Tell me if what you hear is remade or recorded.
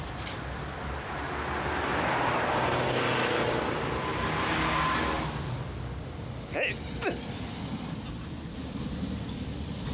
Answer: recorded